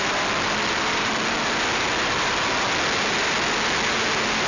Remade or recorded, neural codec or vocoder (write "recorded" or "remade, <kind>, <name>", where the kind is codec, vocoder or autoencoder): recorded